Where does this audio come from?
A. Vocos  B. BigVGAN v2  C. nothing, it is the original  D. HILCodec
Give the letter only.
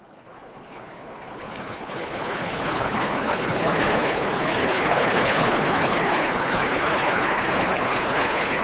D